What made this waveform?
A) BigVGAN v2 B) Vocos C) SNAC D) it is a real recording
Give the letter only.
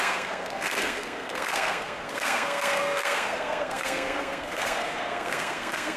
C